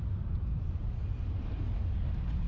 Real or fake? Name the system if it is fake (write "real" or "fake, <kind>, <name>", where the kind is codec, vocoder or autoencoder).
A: real